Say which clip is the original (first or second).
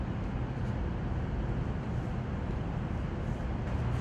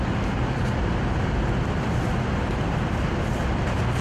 first